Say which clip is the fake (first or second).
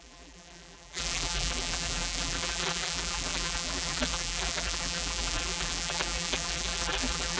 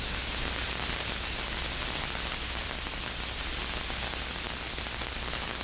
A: first